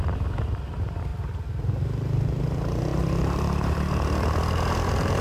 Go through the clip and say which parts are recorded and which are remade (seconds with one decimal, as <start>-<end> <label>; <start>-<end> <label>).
0.0-1.1 recorded; 1.1-2.4 remade; 2.4-2.9 recorded; 2.9-3.8 remade; 3.8-5.2 recorded